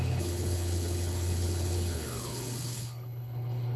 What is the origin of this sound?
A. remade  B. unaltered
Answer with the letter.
A